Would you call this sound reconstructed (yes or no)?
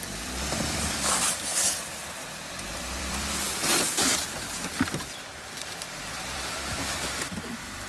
yes